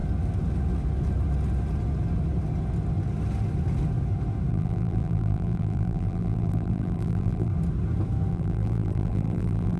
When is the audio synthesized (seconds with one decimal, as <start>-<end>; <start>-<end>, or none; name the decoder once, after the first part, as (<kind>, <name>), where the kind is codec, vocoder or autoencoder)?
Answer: 4.5-7.5 (vocoder, BigVGAN v2); 8.3-9.8